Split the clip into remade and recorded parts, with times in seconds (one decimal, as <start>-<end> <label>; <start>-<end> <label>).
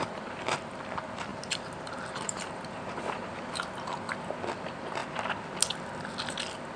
0.0-0.7 remade; 0.7-1.3 recorded; 1.3-3.6 remade; 3.6-6.8 recorded